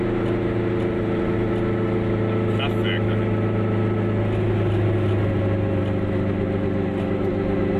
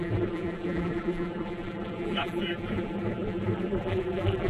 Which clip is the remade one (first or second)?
second